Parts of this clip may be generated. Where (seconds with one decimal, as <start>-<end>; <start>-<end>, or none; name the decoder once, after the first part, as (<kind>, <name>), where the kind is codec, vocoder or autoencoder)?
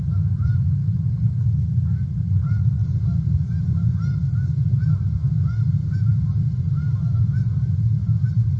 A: none